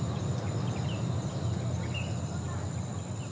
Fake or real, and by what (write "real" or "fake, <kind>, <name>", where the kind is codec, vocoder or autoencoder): real